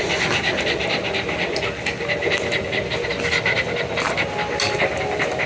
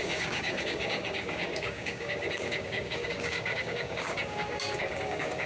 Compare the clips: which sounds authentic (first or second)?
first